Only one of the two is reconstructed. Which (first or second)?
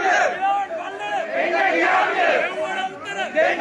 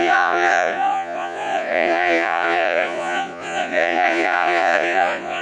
second